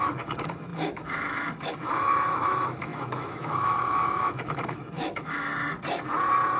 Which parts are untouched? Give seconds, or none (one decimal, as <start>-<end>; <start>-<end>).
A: 5.5-6.6